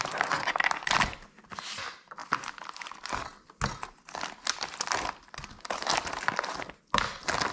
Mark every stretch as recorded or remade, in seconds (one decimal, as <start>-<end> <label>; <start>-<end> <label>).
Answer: 0.0-7.5 recorded